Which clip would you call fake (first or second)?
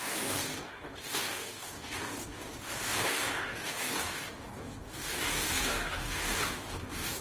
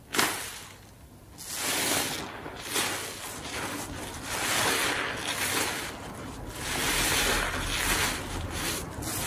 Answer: first